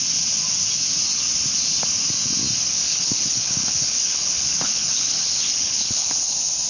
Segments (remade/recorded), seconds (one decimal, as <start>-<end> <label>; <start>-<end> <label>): 0.0-2.9 recorded; 2.9-6.3 remade; 6.3-6.7 recorded